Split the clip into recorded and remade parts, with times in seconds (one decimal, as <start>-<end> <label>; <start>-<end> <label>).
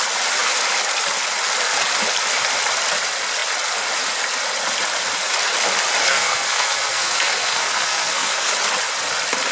0.0-6.1 recorded; 6.1-8.5 remade; 8.5-9.5 recorded